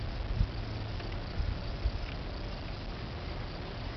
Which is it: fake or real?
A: real